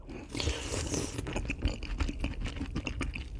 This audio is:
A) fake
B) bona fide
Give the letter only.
B